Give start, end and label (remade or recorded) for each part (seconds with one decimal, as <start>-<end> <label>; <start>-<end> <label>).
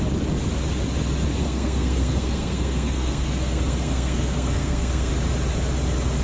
0.0-1.4 recorded; 1.4-5.1 remade; 5.1-6.2 recorded